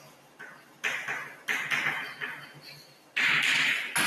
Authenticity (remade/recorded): recorded